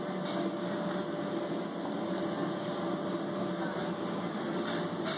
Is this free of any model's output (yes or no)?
yes